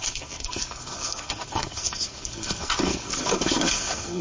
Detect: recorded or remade remade